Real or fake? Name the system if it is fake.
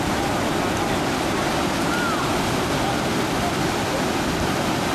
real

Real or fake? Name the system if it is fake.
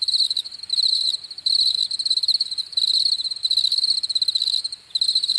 real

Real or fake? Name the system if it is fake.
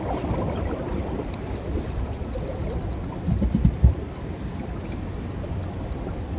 real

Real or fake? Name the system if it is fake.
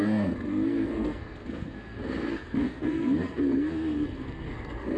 fake, codec, SNAC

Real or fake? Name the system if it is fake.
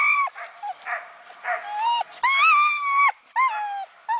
real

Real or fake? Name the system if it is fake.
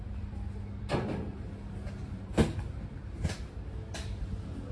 real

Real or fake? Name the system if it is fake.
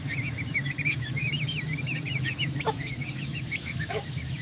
fake, autoencoder, DAC-VAE